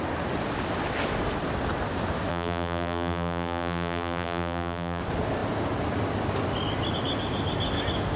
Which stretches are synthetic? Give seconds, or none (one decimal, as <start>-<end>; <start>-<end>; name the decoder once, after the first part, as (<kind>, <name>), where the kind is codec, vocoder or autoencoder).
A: 2.3-5.0 (vocoder, BigVGAN v2)